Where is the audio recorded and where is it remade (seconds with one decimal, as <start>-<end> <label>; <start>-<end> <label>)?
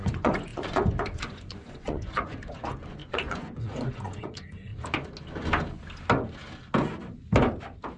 0.0-4.7 remade; 4.7-8.0 recorded